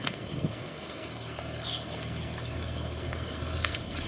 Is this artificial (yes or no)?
yes